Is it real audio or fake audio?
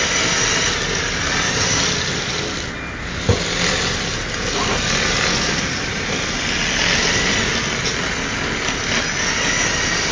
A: real